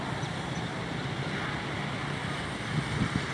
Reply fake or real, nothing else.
real